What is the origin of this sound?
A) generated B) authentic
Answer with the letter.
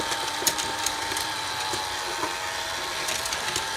A